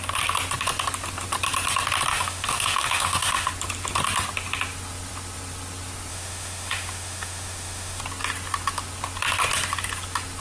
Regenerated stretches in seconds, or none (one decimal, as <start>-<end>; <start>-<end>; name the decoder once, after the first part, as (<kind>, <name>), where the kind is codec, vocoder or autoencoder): 2.1-3.5 (autoencoder, DAC-VAE); 6.1-8.0